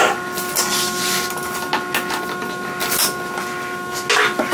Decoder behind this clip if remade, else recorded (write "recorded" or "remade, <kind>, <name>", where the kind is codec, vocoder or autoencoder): recorded